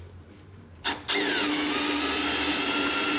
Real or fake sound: real